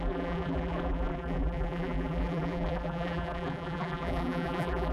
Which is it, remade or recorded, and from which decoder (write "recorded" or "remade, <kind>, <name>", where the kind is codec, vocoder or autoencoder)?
remade, vocoder, BigVGAN v2